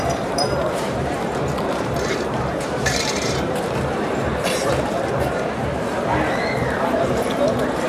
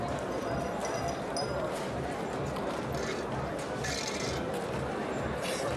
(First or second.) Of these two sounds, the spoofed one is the first